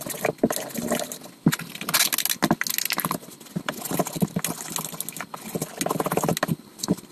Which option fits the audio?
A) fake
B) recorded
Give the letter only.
B